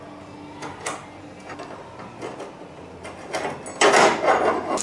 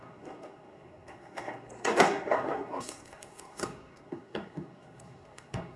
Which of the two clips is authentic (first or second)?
first